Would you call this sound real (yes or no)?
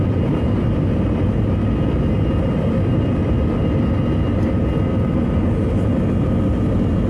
yes